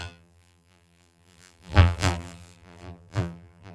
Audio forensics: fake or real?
fake